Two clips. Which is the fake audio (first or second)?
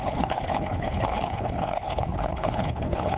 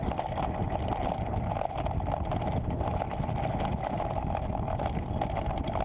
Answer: first